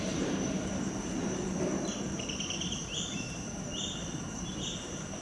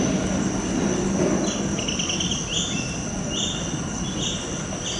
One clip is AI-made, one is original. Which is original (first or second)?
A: second